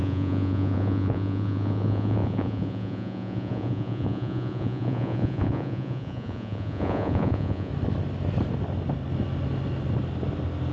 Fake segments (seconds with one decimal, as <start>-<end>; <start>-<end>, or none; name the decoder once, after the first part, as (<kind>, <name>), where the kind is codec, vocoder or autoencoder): 0.0-7.7 (vocoder, Vocos)